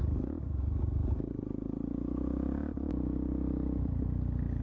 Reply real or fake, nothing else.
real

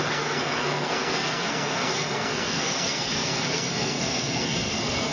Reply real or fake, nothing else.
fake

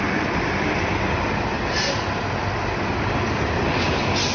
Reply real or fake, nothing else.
real